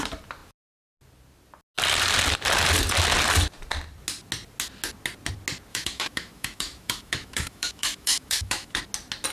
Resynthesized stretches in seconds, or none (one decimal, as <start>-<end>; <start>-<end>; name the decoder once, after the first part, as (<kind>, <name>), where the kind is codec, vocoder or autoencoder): 5.7-8.8 (autoencoder, DAC-VAE)

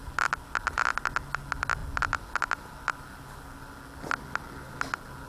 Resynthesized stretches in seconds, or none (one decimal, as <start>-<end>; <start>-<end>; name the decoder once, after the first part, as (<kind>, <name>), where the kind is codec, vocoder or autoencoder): 0.0-0.9 (vocoder, BigVGAN v2); 1.8-3.7

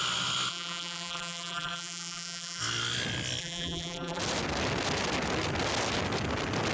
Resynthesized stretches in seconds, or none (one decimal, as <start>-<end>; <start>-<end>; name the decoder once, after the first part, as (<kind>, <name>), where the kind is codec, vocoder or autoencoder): 0.5-2.6 (vocoder, BigVGAN v2); 3.4-4.2

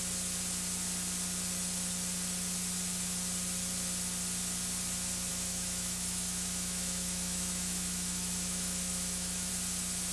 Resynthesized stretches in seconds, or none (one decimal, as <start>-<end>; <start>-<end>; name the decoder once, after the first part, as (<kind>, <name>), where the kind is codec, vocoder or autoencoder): 5.3-9.5 (autoencoder, DAC-VAE)

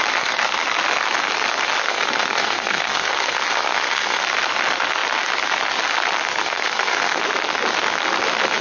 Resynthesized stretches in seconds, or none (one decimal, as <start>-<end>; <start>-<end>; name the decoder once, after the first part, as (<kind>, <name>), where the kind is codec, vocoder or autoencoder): 1.8-4.2 (codec, SNAC); 6.4-7.2

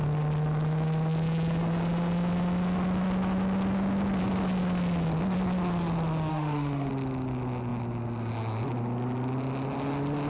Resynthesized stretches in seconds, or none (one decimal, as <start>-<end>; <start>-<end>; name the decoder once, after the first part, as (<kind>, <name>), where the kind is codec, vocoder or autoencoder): 6.3-6.9 (autoencoder, DAC-VAE)